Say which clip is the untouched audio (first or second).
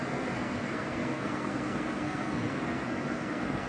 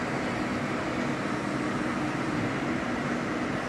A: second